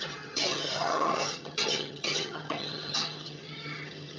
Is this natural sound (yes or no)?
no